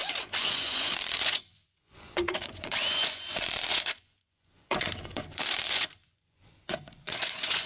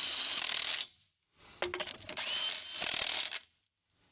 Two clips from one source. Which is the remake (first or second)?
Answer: first